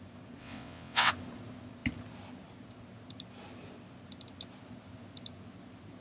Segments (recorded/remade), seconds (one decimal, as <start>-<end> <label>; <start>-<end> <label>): 0.0-0.4 recorded; 0.4-1.1 remade; 1.1-6.0 recorded